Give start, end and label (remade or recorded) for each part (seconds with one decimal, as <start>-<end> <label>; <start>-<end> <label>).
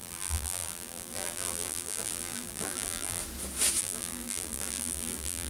0.0-3.2 remade; 3.2-3.8 recorded; 3.8-5.5 remade